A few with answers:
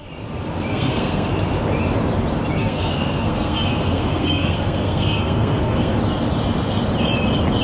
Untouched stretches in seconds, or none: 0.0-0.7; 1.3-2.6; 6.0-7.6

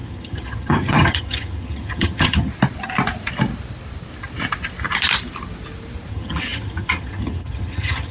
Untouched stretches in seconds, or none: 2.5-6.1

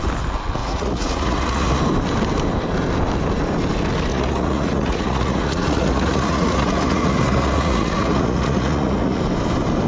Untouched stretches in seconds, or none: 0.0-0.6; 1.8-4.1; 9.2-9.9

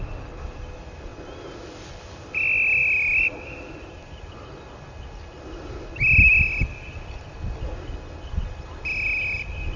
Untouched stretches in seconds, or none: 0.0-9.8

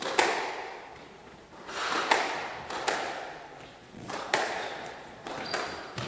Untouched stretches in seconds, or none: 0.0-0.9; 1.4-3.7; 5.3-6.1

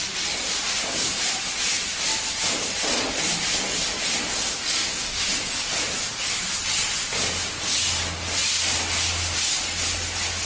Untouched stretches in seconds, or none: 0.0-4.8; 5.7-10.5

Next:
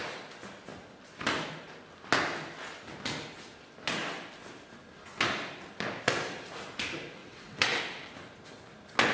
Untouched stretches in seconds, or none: 0.0-7.2; 7.8-9.1